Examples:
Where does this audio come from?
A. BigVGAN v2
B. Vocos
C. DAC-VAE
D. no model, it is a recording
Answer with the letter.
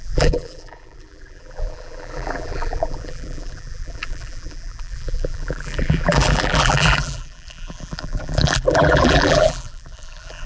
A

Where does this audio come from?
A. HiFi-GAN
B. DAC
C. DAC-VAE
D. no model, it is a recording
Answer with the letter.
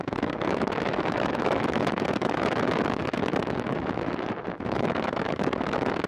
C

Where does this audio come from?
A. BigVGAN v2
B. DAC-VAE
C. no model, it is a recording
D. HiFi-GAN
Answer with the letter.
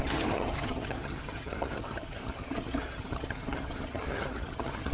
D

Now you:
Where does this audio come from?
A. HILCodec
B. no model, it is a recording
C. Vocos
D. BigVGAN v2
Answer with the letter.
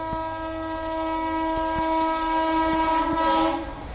B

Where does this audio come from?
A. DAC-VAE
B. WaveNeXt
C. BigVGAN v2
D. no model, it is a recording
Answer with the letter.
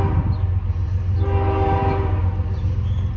D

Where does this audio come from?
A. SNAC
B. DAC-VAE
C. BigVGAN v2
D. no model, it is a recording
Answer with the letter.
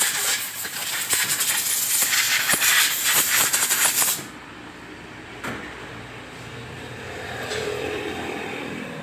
C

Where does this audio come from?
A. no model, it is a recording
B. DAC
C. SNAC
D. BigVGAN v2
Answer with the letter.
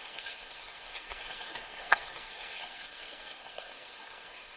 C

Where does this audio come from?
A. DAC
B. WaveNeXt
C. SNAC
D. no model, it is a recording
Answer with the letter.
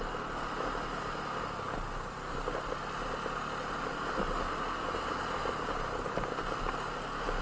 D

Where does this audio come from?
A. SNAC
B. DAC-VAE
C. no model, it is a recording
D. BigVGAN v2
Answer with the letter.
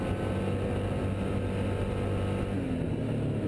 C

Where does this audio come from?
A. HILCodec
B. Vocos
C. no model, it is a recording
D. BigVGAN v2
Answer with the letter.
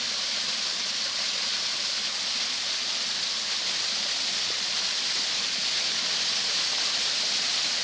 C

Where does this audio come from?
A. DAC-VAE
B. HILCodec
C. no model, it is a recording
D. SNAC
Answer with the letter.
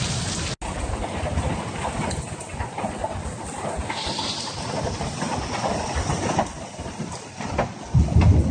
C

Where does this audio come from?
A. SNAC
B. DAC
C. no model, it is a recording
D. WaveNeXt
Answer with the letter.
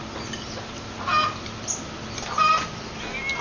C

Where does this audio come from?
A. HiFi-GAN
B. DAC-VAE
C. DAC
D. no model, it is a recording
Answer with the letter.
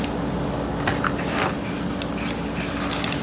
D